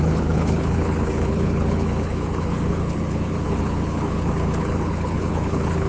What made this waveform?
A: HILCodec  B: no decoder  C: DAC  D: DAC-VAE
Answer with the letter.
A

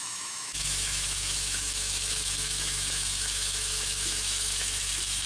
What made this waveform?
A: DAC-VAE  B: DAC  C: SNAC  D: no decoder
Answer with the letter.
A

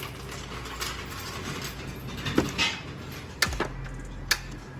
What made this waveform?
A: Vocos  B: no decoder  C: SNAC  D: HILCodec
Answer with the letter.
B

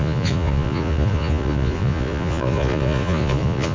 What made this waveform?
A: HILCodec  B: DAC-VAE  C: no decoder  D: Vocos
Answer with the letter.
D